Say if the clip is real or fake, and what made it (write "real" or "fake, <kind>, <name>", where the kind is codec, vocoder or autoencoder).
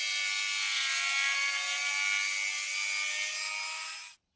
real